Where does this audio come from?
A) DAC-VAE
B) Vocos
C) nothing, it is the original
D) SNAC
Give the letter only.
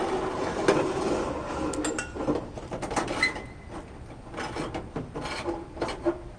C